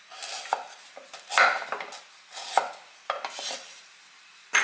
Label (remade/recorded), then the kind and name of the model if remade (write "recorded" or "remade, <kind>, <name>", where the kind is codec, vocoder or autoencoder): recorded